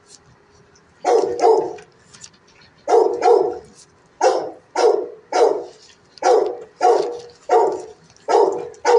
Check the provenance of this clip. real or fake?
real